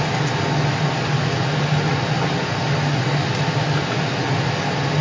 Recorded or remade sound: recorded